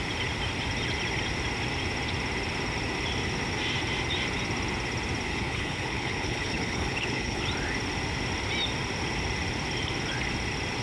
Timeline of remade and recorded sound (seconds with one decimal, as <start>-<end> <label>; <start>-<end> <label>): 0.0-5.3 recorded; 5.3-7.4 remade; 7.4-10.8 recorded